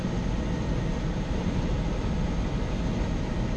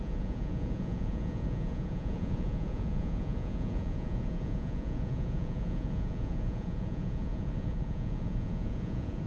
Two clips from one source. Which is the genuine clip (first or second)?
first